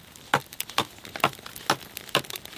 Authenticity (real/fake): real